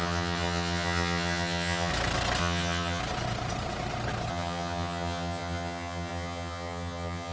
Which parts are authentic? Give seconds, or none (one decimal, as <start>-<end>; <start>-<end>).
1.9-2.4; 3.0-4.3

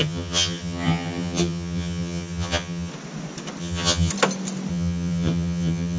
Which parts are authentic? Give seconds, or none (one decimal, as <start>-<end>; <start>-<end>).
2.9-3.6; 4.1-4.7

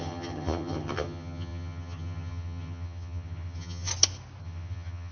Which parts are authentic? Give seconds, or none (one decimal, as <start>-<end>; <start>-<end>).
3.9-4.4

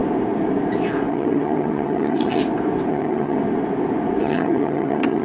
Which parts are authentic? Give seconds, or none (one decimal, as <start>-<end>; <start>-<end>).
0.0-1.1; 2.4-2.9; 3.4-4.2

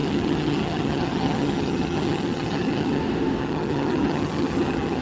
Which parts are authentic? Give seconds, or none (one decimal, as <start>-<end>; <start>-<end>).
3.0-3.4

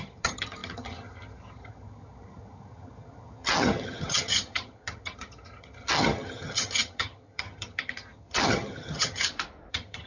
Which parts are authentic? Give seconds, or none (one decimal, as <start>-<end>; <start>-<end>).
9.2-9.7